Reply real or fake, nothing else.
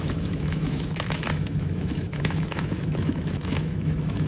fake